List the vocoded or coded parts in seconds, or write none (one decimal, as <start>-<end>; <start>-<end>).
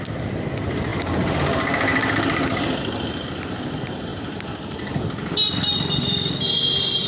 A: 4.1-6.4